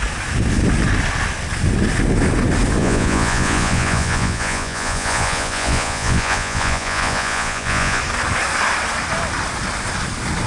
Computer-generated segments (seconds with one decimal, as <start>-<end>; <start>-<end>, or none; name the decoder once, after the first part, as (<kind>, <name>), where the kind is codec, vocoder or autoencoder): 2.8-8.0 (vocoder, Vocos)

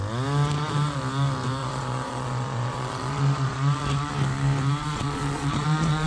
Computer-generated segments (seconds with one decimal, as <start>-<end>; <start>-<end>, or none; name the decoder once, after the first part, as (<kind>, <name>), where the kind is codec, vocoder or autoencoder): 1.6-4.1 (vocoder, Vocos); 4.8-6.1

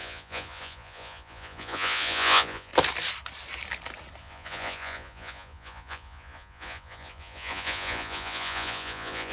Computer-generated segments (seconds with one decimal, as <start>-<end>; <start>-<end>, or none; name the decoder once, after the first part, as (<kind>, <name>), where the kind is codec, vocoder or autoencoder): 0.0-2.7 (vocoder, Vocos); 4.2-9.3

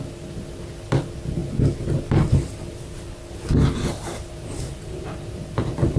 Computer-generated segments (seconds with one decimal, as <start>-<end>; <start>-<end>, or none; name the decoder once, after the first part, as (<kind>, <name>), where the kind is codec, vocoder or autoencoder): none